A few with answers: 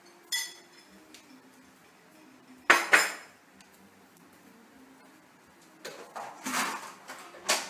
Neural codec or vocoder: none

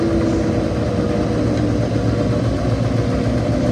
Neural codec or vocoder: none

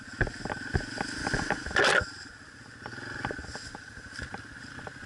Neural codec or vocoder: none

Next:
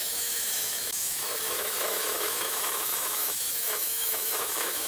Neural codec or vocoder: autoencoder, DAC-VAE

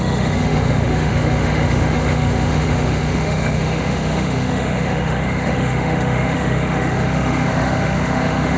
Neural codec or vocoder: autoencoder, DAC-VAE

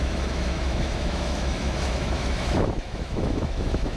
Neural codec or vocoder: autoencoder, DAC-VAE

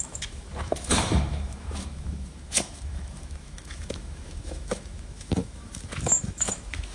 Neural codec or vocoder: autoencoder, DAC-VAE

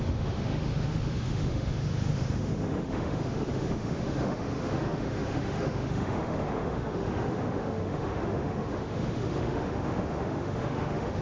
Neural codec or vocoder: autoencoder, DAC-VAE